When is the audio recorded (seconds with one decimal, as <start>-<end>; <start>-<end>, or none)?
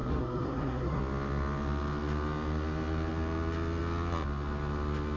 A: 1.0-5.2